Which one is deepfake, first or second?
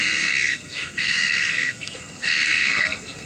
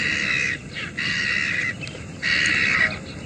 first